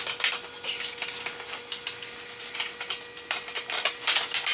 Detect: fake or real real